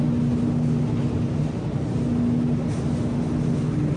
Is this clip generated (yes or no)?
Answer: no